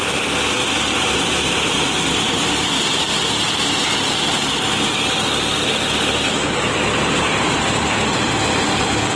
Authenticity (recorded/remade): recorded